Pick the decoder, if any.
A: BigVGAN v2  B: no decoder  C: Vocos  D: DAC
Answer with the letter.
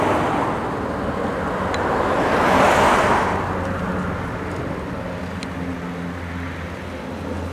B